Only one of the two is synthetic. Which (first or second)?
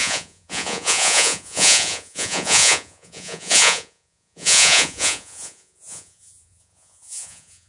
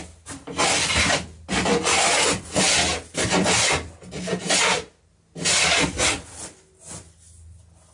first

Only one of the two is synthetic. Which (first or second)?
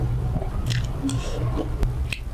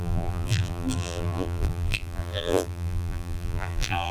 second